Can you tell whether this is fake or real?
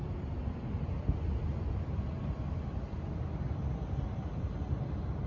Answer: real